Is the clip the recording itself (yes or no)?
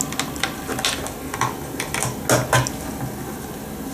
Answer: yes